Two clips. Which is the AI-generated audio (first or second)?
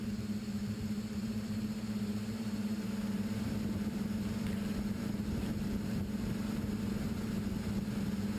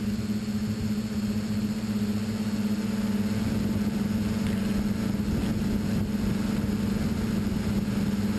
first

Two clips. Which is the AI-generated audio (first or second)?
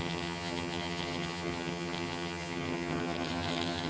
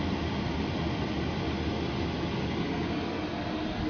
first